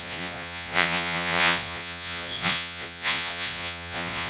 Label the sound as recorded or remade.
remade